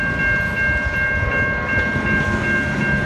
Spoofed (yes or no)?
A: no